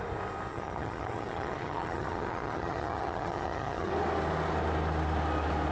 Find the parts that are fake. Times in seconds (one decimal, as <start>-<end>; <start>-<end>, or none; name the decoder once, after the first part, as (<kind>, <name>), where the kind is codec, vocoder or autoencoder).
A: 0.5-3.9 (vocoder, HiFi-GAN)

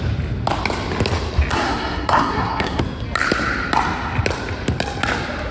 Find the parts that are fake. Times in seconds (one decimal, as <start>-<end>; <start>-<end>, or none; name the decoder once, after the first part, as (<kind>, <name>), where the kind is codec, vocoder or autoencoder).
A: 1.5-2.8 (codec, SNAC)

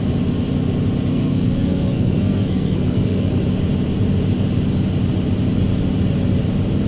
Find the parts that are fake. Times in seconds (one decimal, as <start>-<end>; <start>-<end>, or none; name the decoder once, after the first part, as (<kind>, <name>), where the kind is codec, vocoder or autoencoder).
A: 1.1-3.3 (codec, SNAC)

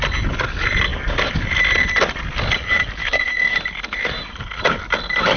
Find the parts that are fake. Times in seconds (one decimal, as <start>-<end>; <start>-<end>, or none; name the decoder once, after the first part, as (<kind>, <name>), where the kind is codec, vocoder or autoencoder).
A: 3.0-3.6 (autoencoder, DAC-VAE)

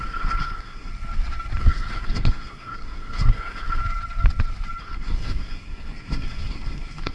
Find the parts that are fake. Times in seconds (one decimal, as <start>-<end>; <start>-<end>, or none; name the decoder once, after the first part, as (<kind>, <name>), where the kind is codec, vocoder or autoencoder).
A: 0.0-0.9 (codec, SNAC); 1.6-3.8; 4.8-7.1